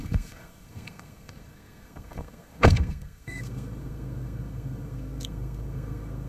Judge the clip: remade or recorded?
remade